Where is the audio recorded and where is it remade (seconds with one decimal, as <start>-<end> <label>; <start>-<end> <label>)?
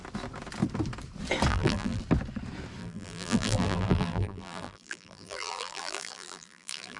0.0-1.5 recorded; 1.5-2.0 remade; 2.0-2.8 recorded; 2.8-7.0 remade